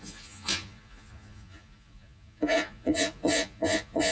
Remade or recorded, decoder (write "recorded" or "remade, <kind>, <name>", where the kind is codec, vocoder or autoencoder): remade, vocoder, Vocos